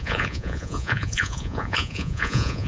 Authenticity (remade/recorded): remade